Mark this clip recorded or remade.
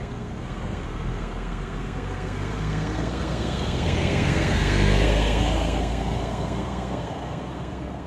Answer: remade